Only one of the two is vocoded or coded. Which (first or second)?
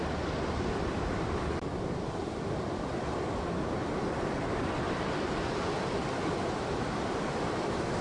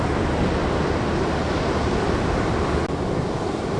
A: first